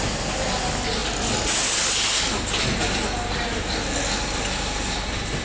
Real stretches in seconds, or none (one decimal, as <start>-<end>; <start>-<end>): 0.0-5.4